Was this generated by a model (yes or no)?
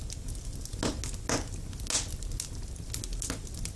no